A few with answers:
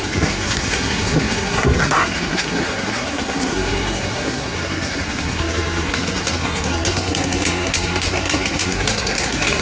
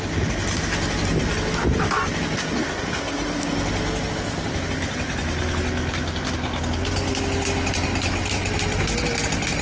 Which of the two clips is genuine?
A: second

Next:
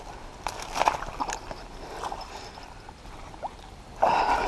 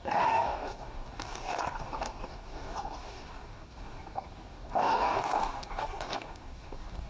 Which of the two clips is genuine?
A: first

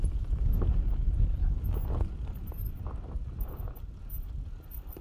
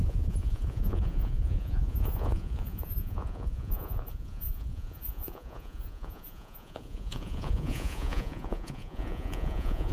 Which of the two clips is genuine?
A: first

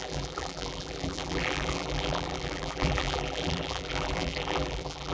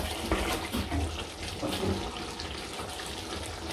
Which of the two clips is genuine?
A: second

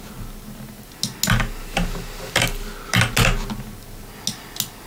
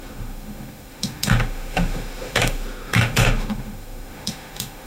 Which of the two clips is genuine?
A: first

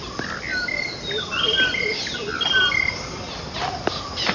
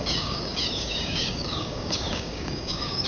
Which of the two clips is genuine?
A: first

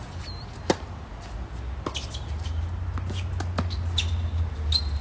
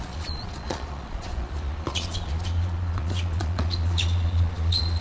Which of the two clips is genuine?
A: first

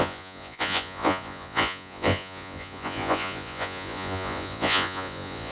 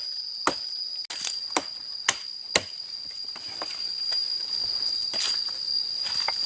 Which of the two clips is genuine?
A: second